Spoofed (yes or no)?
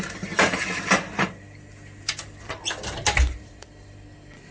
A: no